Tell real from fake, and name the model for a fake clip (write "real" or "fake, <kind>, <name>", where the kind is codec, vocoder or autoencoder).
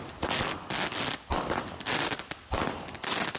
real